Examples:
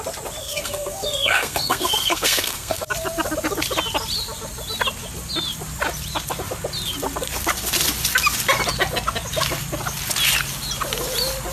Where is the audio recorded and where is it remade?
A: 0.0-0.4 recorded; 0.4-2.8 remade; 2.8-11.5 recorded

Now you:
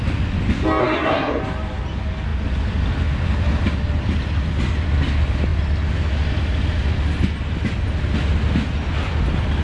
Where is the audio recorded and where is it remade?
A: 0.0-0.8 recorded; 0.8-1.4 remade; 1.4-9.6 recorded

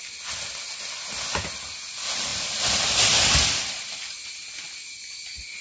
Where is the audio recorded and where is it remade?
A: 0.0-5.6 recorded

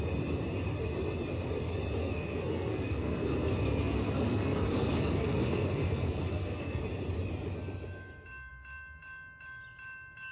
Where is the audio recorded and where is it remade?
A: 0.0-2.0 recorded; 2.0-6.8 remade; 6.8-10.3 recorded

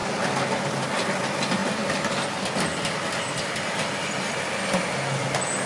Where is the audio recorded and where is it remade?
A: 0.0-5.7 recorded